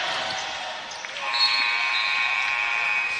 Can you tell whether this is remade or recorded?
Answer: remade